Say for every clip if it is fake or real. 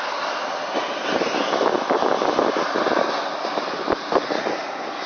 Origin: real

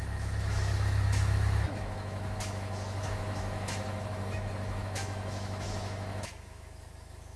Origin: fake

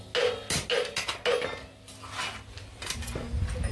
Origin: real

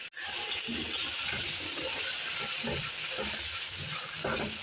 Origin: real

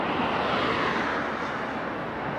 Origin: real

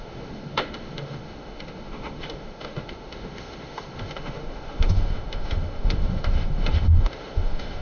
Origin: fake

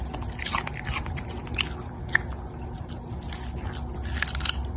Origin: real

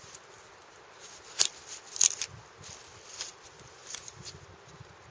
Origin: real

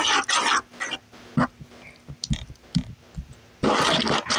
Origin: real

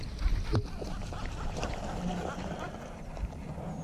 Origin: real